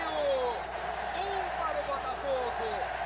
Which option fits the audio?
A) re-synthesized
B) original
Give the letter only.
B